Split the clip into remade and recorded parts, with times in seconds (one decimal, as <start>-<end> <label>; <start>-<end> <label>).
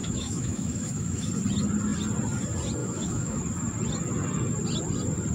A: 0.0-1.3 remade; 1.3-2.8 recorded; 2.8-3.4 remade; 3.4-5.3 recorded